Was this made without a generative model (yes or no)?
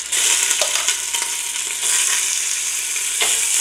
yes